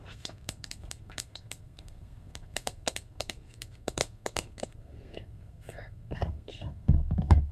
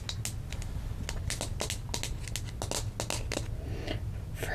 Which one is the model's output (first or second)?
first